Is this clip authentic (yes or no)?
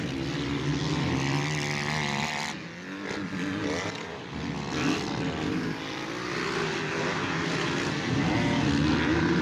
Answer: yes